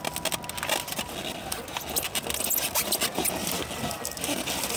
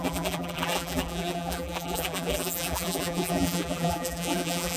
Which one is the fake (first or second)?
second